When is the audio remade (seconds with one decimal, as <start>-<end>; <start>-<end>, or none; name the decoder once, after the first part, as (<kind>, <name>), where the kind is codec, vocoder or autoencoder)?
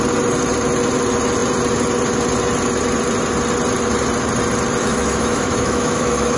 4.8-6.4 (autoencoder, DAC-VAE)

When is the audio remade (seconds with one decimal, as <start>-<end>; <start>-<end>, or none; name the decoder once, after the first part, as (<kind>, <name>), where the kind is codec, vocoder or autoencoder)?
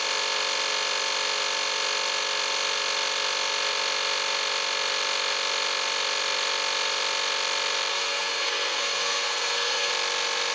7.9-9.9 (codec, SNAC)